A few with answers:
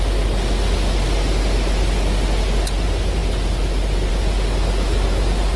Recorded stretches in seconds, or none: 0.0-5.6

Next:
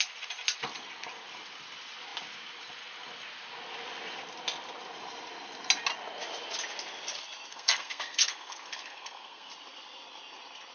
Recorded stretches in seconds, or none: 0.0-7.5; 9.5-10.7

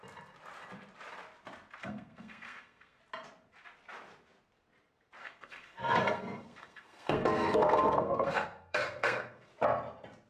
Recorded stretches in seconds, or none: 0.0-1.8; 3.0-5.2; 9.5-10.3

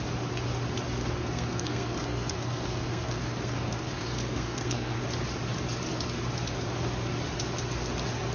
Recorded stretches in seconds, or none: 0.0-1.0; 5.0-8.3

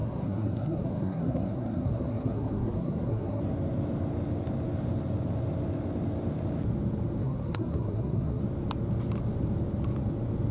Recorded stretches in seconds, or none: 3.4-7.2; 8.4-10.5

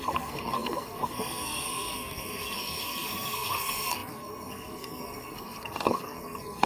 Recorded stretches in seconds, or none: none

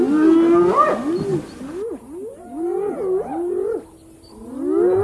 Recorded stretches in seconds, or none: 0.0-5.0